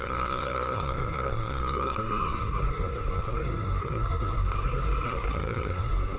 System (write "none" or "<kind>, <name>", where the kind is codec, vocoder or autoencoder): codec, SNAC